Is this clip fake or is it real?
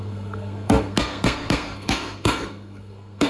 fake